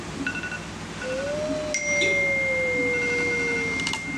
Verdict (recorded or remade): recorded